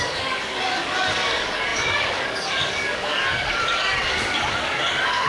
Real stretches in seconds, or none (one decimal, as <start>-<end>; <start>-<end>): none